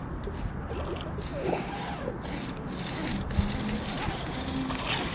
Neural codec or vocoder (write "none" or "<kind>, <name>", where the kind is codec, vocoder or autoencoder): none